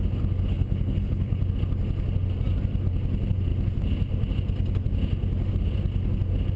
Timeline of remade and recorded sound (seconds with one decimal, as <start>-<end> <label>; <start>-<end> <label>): 0.0-0.5 recorded; 0.5-1.4 remade; 1.4-6.6 recorded